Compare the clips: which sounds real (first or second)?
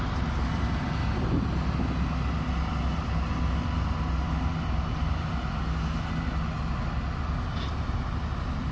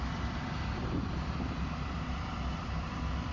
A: first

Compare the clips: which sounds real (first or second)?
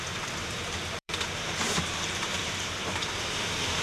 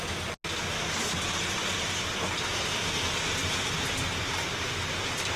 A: second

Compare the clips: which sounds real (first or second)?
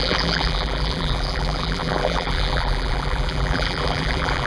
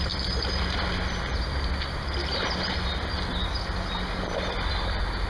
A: second